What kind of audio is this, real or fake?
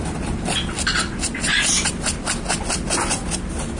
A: real